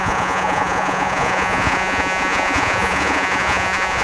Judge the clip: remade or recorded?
remade